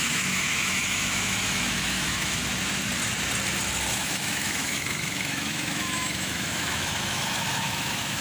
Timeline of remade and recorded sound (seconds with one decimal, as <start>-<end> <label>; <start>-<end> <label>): 0.0-2.4 remade; 2.4-3.9 recorded; 3.9-8.2 remade